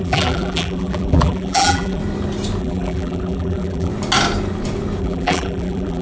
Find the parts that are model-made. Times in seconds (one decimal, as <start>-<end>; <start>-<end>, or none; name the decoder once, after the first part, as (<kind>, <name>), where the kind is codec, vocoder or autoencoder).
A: 0.0-2.0 (vocoder, BigVGAN v2); 2.6-3.9; 5.0-6.0